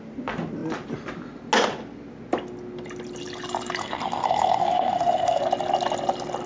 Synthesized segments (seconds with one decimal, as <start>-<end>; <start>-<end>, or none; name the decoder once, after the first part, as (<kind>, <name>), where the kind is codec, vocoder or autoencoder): 3.8-5.4 (codec, SNAC)